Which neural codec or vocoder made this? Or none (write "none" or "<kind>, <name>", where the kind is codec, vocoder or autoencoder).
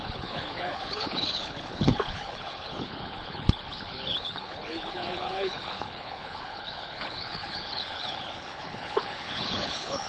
codec, HILCodec